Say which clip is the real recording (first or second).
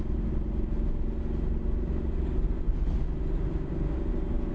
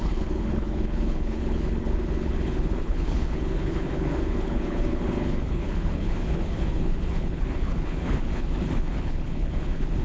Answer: first